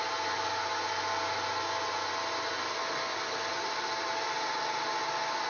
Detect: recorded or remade recorded